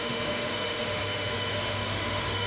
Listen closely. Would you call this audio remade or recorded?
remade